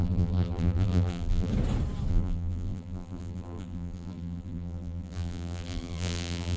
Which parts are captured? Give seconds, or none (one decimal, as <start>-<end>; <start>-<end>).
1.5-2.1